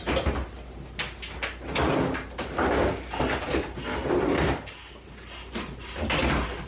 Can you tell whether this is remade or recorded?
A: recorded